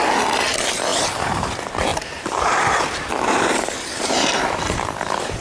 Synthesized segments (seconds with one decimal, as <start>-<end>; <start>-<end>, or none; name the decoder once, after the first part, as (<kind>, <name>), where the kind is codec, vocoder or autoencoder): 0.9-1.5 (vocoder, BigVGAN v2); 1.9-4.6